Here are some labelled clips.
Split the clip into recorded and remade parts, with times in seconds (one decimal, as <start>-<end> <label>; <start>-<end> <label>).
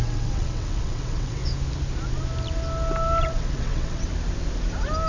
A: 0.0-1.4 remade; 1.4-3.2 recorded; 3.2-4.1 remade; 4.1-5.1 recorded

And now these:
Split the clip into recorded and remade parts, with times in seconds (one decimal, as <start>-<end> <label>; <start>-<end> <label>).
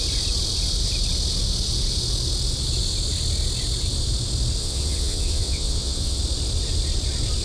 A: 0.0-4.6 recorded; 4.6-6.2 remade; 6.2-7.4 recorded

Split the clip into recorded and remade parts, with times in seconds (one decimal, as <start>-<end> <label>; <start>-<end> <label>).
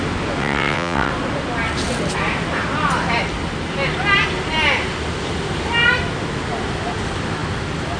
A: 0.0-0.4 recorded; 0.4-1.1 remade; 1.1-8.0 recorded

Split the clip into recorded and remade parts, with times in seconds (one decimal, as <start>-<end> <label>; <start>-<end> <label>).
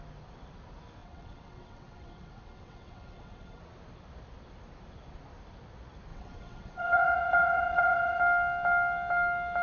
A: 0.0-1.0 recorded; 1.0-3.6 remade; 3.6-6.1 recorded; 6.1-8.2 remade; 8.2-9.6 recorded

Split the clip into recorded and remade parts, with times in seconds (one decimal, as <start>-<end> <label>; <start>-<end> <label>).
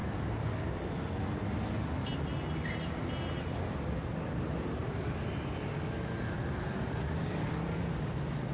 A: 0.0-8.5 recorded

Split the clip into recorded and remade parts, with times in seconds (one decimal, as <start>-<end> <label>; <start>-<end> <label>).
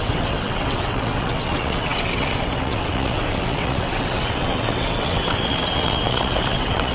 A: 0.0-6.9 remade